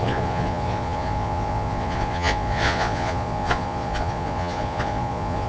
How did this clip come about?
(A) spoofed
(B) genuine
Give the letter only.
A